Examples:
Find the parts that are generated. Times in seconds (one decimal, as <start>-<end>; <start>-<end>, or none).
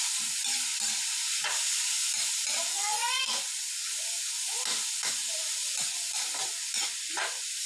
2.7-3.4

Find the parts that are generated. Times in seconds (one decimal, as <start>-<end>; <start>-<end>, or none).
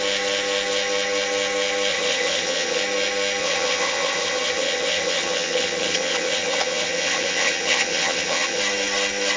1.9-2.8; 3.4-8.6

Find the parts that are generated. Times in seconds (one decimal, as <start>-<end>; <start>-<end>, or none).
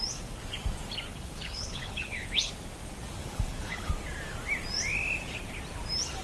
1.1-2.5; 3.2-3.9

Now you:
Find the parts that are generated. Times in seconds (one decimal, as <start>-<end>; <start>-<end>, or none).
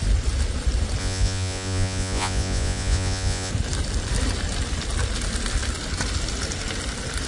1.0-3.5